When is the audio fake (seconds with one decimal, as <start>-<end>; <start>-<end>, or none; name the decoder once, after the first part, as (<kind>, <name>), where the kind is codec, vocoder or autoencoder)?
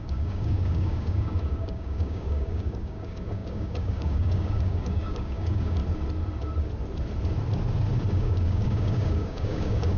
0.0-5.8 (codec, DAC); 8.1-10.0